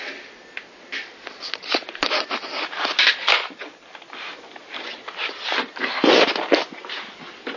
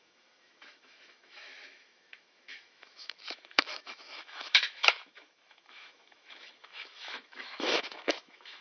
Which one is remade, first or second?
second